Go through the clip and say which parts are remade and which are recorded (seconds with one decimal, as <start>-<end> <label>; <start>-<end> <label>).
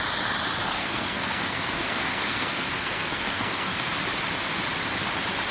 0.0-0.6 recorded; 0.6-3.9 remade; 3.9-5.5 recorded